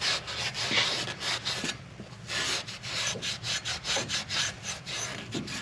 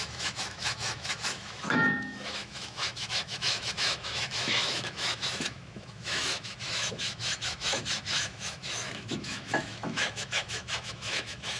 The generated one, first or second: second